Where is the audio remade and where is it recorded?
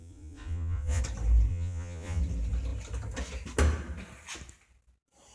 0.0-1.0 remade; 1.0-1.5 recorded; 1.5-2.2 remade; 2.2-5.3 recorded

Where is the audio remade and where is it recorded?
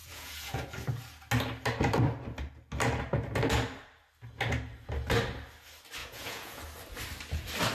0.0-0.6 remade; 0.6-6.0 recorded; 6.0-6.6 remade; 6.6-7.7 recorded